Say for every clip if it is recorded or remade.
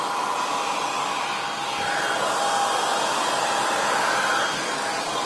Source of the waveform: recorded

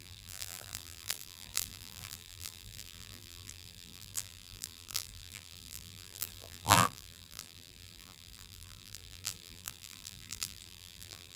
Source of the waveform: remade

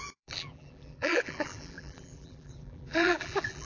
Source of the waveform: remade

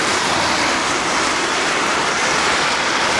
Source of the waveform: remade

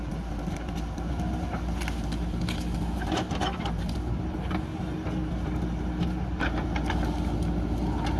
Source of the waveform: recorded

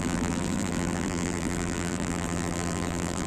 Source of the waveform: remade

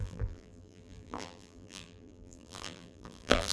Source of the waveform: remade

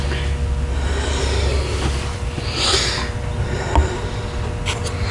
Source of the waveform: recorded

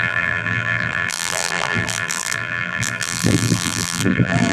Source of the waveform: remade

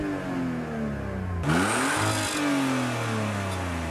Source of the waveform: recorded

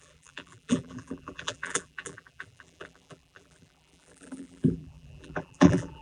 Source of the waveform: remade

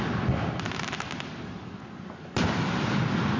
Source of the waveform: recorded